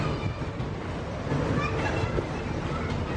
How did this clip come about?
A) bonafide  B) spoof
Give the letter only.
A